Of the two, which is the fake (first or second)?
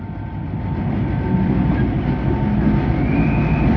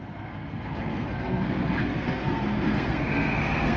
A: second